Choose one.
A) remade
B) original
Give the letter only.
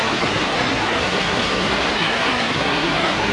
A